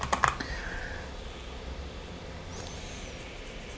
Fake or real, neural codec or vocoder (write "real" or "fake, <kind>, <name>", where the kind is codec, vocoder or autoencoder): real